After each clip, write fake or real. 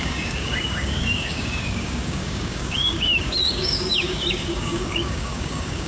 fake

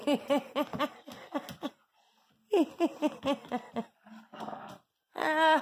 real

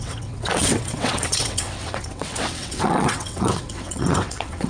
fake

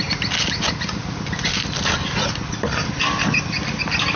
real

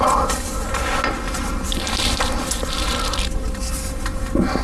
real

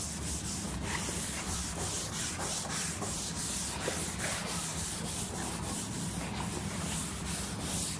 real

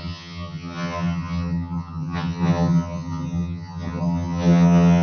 fake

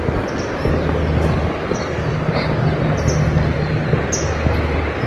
real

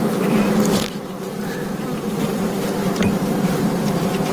fake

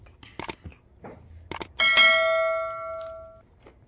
real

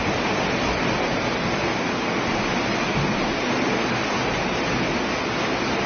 real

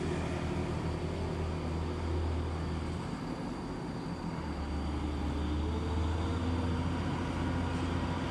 real